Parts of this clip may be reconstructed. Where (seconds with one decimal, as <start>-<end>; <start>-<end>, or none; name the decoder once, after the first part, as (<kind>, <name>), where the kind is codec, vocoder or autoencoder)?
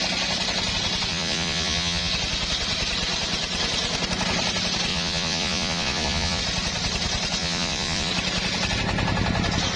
1.1-2.1 (vocoder, Vocos); 4.9-6.4; 7.4-8.1